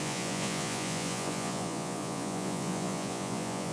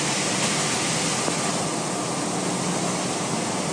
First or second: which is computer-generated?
first